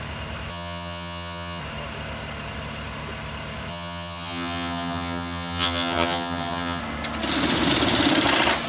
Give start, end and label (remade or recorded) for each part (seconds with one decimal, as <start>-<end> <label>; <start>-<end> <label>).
0.0-0.5 recorded; 0.5-1.6 remade; 1.6-3.7 recorded; 3.7-6.8 remade; 6.8-8.7 recorded